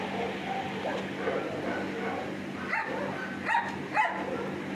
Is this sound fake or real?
real